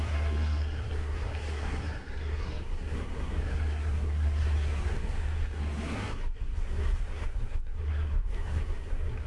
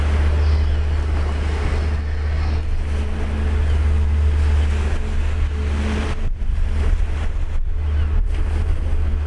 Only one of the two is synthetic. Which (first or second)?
first